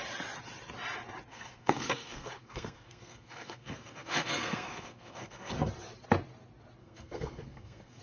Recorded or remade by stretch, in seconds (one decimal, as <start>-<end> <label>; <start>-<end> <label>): 0.0-1.3 recorded; 1.3-5.7 remade; 5.7-6.8 recorded; 6.8-8.0 remade